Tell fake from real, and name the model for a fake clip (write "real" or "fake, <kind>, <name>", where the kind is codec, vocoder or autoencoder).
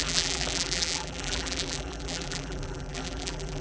fake, vocoder, BigVGAN v2